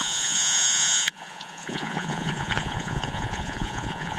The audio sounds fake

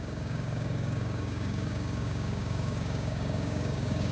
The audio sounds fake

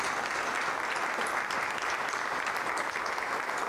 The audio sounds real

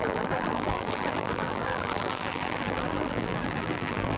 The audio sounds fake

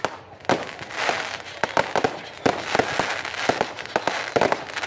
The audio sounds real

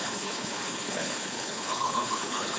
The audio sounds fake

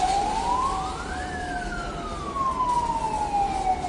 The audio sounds real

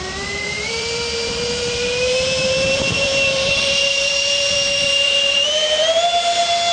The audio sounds fake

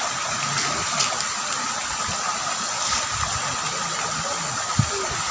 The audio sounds real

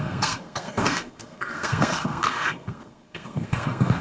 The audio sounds fake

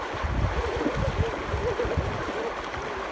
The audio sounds real